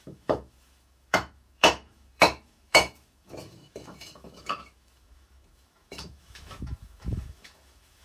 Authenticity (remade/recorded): remade